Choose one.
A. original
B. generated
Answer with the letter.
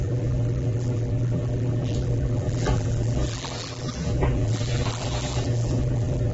B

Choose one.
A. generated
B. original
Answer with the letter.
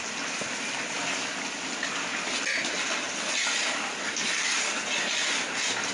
B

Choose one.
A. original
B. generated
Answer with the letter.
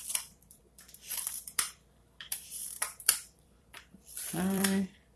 B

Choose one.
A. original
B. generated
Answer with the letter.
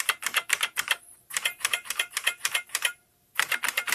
B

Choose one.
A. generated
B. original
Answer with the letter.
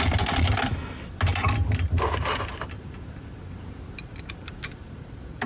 B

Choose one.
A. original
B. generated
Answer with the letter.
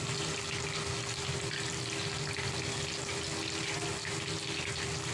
A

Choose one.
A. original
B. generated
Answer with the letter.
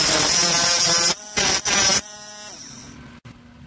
A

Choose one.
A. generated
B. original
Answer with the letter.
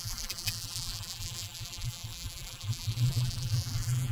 A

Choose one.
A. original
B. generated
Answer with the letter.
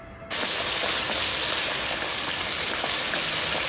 A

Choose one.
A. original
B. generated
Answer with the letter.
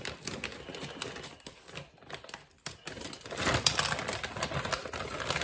A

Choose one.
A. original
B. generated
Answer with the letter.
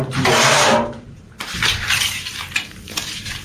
B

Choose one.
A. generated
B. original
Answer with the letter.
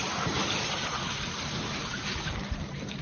A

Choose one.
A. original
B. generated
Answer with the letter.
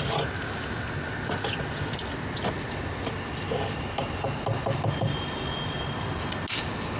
A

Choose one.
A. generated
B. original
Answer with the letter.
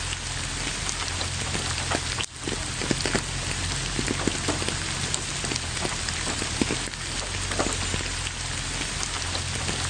B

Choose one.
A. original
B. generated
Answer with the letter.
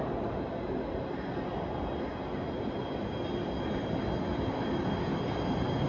A